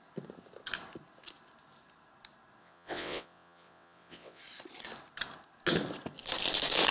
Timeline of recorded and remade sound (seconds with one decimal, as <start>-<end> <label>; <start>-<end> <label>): 0.0-2.6 recorded; 2.6-4.4 remade; 4.4-6.9 recorded